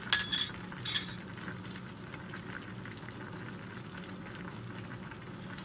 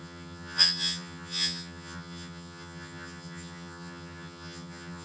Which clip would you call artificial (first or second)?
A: second